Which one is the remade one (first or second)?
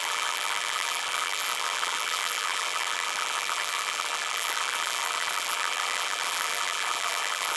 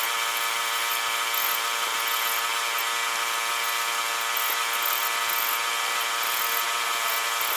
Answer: first